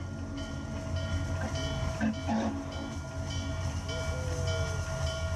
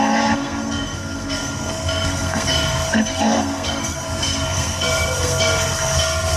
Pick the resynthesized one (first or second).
second